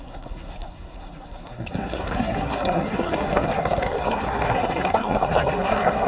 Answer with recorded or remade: remade